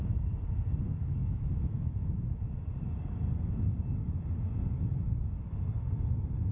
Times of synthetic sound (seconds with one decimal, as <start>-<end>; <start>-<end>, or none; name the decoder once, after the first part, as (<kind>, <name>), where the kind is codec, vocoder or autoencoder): 1.2-2.1 (autoencoder, DAC-VAE)